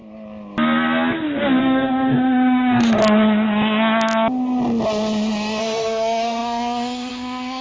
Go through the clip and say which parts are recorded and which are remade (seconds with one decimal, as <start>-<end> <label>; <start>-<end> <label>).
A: 0.0-1.6 recorded; 1.6-3.0 remade; 3.0-5.6 recorded; 5.6-7.6 remade